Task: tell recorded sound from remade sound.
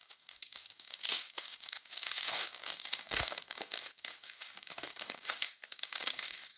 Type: remade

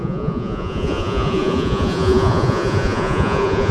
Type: remade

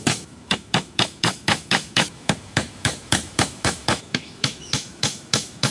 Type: remade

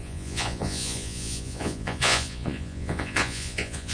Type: remade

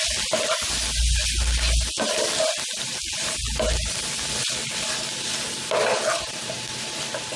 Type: recorded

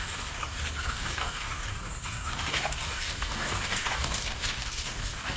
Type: remade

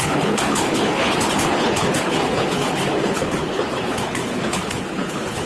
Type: remade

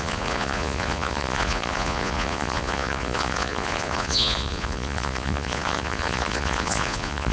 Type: remade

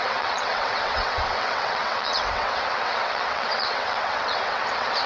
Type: remade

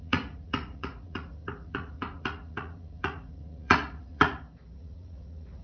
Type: remade